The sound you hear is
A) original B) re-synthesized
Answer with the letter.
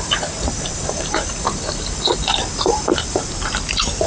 B